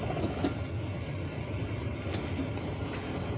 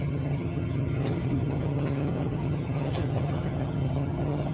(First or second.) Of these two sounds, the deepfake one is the second